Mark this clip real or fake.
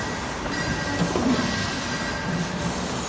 real